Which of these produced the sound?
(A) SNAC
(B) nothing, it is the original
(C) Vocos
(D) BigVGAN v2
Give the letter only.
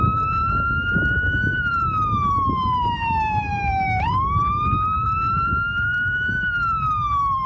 D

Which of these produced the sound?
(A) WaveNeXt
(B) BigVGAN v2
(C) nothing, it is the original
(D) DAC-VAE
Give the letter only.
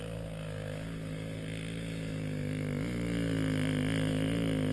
C